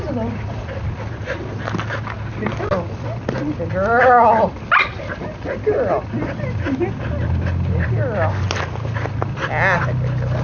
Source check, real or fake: real